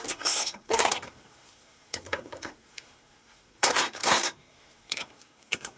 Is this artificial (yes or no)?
yes